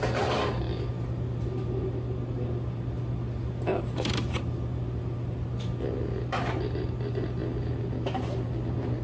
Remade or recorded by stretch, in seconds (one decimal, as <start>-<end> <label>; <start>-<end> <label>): 0.0-3.7 recorded; 3.7-4.5 remade; 4.5-9.0 recorded